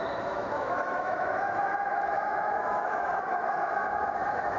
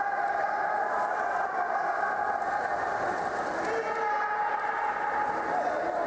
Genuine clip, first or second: second